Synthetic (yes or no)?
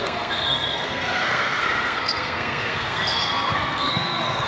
yes